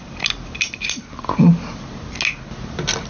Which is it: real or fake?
real